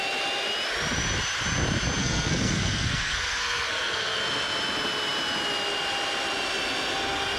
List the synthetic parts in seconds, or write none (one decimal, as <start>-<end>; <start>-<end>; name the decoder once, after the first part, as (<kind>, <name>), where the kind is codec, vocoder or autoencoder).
2.0-4.2 (codec, SNAC)